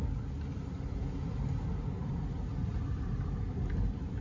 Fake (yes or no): no